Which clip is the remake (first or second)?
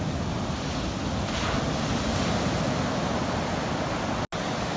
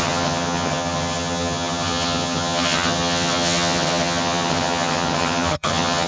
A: second